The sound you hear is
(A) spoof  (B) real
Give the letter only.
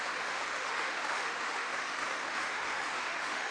A